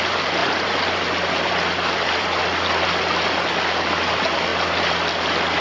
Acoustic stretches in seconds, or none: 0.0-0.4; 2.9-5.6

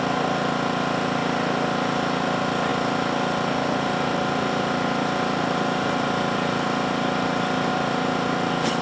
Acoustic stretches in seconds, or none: 0.0-8.8

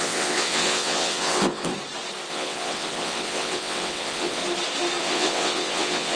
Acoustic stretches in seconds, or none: 1.7-2.3; 4.4-5.0